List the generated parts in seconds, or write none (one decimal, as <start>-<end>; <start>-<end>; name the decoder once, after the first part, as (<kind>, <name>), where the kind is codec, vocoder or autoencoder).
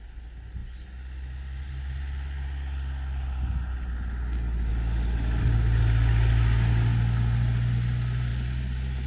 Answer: none